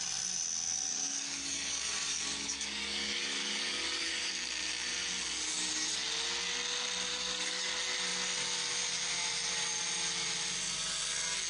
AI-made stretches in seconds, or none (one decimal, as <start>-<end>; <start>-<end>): 0.9-4.3; 7.1-7.7